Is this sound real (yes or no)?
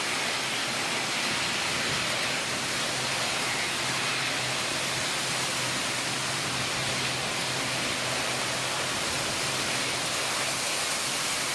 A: yes